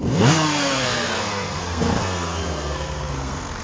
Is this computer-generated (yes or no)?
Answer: yes